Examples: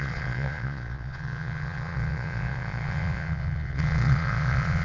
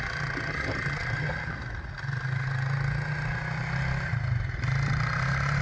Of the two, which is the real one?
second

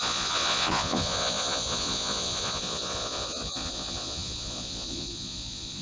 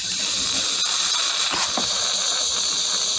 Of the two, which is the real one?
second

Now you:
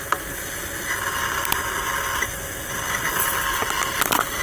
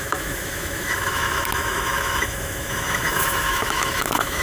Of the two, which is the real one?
first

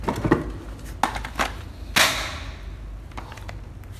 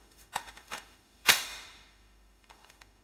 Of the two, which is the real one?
first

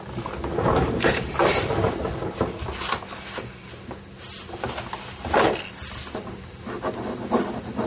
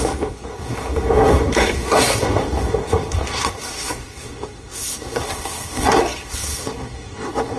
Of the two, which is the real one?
first